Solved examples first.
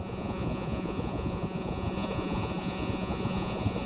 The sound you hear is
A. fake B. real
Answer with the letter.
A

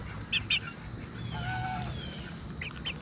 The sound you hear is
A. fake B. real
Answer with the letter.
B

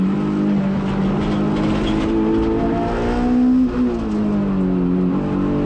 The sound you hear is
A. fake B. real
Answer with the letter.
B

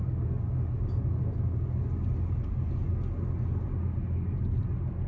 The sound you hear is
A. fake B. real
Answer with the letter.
B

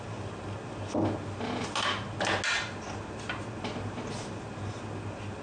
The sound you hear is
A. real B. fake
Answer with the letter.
A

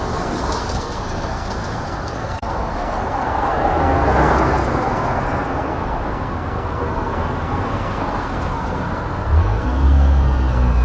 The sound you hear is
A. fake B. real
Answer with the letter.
A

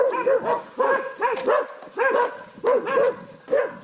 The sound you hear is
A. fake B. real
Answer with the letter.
B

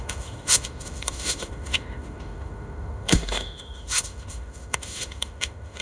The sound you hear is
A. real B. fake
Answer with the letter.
B